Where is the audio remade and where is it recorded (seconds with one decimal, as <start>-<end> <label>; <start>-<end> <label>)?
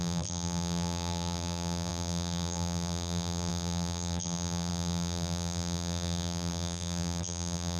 0.0-7.8 remade